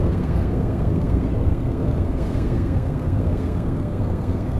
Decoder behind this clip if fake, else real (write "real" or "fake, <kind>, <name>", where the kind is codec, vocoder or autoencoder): fake, codec, SNAC